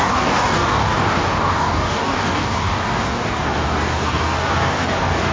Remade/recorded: remade